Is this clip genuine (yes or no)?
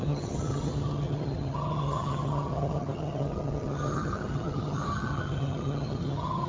no